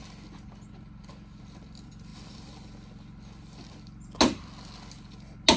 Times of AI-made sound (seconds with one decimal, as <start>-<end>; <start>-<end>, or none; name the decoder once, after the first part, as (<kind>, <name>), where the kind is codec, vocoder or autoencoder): none